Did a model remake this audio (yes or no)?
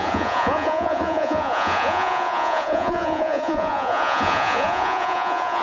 yes